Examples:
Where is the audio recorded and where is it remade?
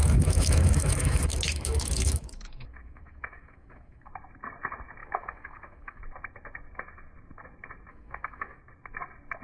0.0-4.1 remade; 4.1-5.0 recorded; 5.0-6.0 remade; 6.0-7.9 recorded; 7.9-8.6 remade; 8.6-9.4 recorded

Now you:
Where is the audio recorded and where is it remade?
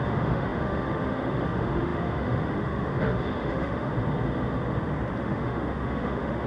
0.0-3.9 remade; 3.9-5.2 recorded; 5.2-6.5 remade